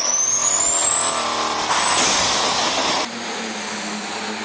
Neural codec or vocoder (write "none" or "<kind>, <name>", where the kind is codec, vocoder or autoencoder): none